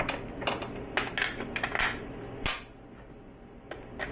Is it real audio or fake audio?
real